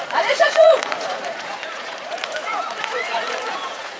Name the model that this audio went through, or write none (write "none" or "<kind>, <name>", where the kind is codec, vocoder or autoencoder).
vocoder, Vocos